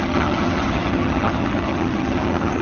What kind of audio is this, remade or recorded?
remade